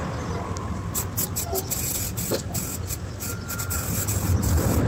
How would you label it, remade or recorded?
recorded